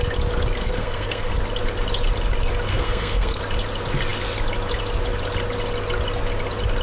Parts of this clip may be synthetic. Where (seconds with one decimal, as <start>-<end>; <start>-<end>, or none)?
0.6-1.3; 2.7-3.4